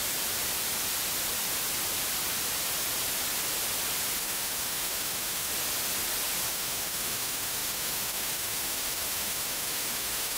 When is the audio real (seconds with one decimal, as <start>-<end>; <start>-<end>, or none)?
0.0-4.2; 5.5-6.5